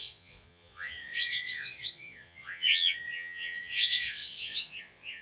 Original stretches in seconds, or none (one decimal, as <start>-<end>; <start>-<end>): none